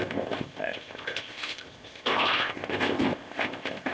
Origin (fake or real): fake